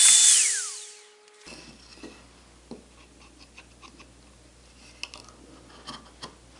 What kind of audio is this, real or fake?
real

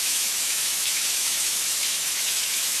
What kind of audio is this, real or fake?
fake